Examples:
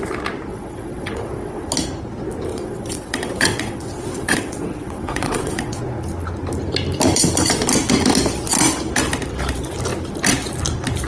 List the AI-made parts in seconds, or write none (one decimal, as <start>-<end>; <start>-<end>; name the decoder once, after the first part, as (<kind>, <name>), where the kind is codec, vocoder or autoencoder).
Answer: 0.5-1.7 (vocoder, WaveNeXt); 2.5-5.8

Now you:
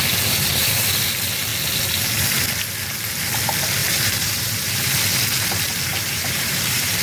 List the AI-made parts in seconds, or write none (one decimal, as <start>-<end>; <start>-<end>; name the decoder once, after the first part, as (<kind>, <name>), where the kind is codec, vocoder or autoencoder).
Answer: 3.8-4.9 (vocoder, BigVGAN v2); 5.9-7.0

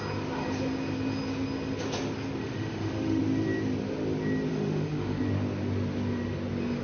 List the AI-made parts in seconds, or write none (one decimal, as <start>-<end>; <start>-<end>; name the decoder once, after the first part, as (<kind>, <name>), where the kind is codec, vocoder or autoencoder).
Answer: 2.4-3.2 (autoencoder, DAC-VAE); 4.5-5.2

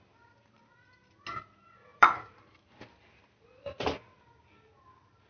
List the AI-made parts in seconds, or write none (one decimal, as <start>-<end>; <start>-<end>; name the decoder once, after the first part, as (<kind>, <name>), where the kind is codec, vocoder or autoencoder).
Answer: 1.9-3.1 (vocoder, BigVGAN v2)

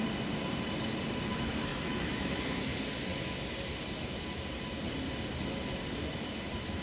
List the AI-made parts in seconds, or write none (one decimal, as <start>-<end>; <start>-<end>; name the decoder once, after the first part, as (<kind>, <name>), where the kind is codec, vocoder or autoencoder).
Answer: 1.7-2.6 (autoencoder, DAC-VAE)

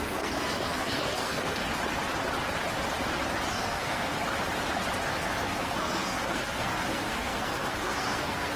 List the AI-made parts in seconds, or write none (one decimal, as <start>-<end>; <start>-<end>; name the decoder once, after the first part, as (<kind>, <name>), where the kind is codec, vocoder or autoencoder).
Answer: 0.0-1.6 (codec, SNAC); 3.5-4.1; 5.1-8.6

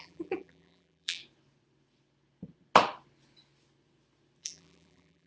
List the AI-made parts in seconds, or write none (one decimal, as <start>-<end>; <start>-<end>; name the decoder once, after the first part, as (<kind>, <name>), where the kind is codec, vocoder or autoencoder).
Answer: 0.0-1.2 (vocoder, BigVGAN v2); 4.4-5.3